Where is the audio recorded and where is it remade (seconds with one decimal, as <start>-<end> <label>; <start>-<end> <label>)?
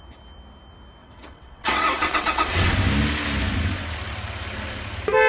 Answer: 0.0-1.0 recorded; 1.0-2.7 remade; 2.7-5.3 recorded